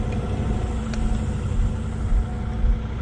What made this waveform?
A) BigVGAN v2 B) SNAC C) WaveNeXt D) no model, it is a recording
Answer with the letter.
D